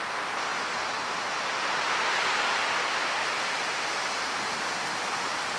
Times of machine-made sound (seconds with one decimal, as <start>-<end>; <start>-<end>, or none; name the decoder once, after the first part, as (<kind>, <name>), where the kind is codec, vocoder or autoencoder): none